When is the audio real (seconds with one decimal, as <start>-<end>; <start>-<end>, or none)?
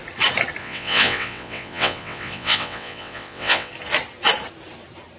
0.0-0.6; 3.7-5.2